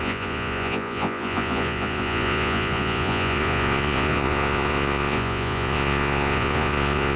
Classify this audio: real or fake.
fake